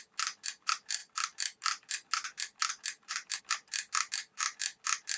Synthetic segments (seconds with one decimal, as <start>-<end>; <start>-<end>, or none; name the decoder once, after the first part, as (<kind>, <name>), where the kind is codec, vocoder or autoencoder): none